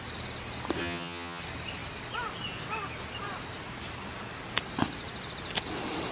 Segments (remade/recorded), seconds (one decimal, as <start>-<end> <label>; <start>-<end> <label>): 0.0-0.8 recorded; 0.8-1.4 remade; 1.4-6.1 recorded